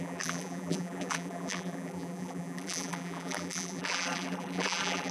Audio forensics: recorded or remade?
remade